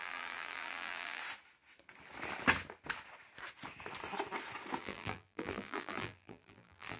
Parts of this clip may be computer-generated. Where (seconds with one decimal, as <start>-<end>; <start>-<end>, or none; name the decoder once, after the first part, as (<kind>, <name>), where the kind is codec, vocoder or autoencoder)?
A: 0.0-1.2 (vocoder, BigVGAN v2); 4.8-7.0